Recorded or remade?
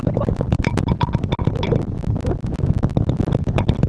recorded